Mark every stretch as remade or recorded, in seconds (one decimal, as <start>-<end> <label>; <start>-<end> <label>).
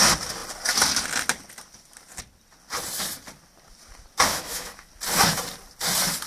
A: 0.0-4.3 recorded; 4.3-4.9 remade; 4.9-6.3 recorded